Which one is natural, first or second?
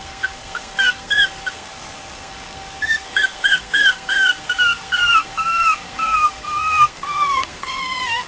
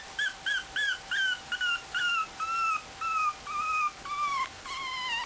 second